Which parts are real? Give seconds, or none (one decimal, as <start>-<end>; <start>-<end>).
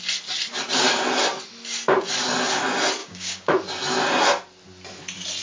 0.0-3.0; 3.5-5.4